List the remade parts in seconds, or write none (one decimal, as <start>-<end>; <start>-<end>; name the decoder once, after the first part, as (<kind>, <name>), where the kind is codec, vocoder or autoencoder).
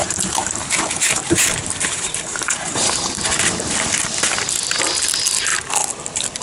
0.0-3.3 (vocoder, BigVGAN v2)